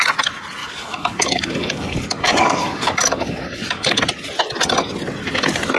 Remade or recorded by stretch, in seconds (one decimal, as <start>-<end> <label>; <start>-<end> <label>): 0.0-0.6 recorded; 0.6-4.0 remade; 4.0-5.8 recorded